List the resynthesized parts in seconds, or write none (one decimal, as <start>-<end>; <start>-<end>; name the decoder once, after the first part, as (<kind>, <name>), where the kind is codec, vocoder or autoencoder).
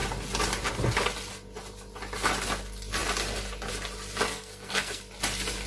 4.3-5.0 (codec, SNAC)